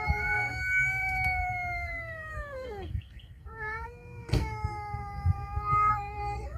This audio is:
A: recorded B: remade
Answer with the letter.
B